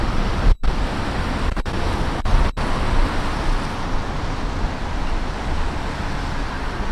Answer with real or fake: real